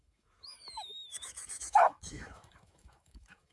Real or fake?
fake